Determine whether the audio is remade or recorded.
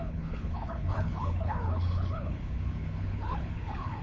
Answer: remade